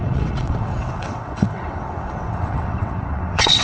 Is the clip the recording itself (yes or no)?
no